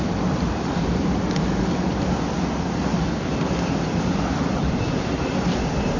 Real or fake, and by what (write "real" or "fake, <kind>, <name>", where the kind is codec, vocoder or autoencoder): fake, vocoder, BigVGAN v2